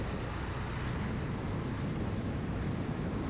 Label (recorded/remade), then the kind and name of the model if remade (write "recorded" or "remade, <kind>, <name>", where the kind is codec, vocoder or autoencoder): recorded